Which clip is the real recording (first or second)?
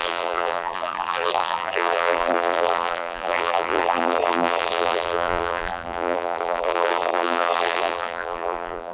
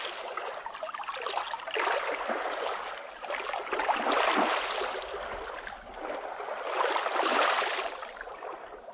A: second